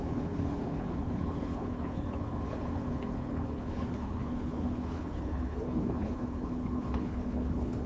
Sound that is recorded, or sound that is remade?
remade